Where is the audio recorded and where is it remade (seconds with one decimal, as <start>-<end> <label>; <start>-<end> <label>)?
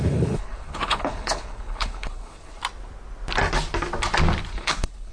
0.0-2.6 remade; 2.6-4.5 recorded; 4.5-5.1 remade